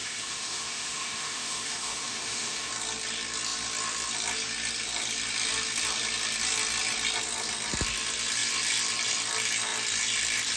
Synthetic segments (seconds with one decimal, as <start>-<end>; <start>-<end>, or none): 0.0-2.7